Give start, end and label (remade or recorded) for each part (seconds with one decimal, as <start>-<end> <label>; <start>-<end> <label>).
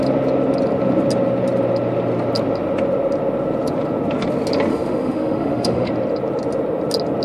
0.0-4.7 recorded; 4.7-5.9 remade; 5.9-7.2 recorded